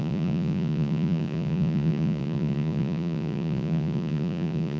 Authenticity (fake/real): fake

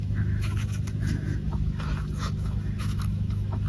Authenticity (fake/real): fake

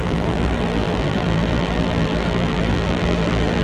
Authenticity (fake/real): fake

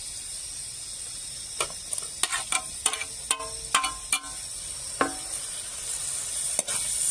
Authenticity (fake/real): real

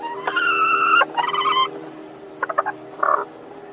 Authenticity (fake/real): real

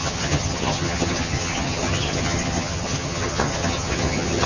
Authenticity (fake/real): fake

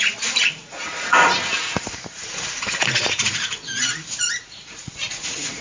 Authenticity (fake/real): fake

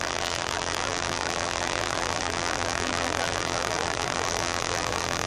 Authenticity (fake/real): fake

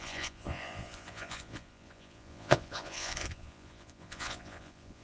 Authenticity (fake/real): fake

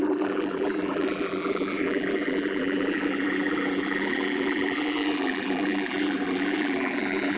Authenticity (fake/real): fake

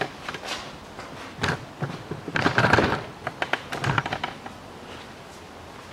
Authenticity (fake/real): real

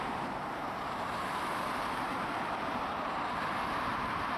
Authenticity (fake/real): fake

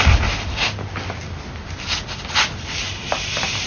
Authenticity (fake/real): real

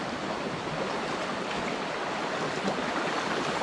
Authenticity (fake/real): real